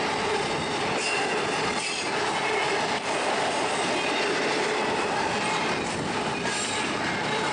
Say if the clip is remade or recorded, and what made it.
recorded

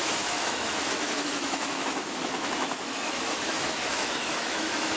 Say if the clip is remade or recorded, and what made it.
remade, autoencoder, DAC-VAE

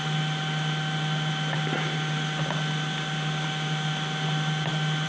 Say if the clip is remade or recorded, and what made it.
recorded